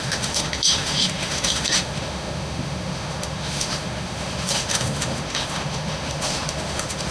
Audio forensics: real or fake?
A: fake